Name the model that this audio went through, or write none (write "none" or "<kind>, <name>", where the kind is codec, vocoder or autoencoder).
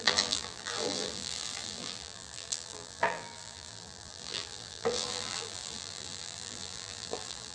vocoder, BigVGAN v2